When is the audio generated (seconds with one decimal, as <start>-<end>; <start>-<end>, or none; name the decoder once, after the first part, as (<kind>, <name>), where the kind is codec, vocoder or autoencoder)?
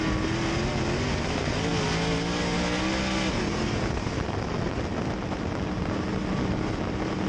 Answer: none